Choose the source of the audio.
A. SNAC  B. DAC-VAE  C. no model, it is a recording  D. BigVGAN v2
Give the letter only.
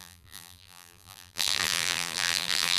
D